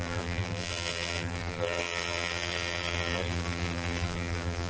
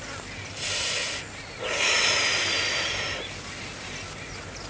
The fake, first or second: first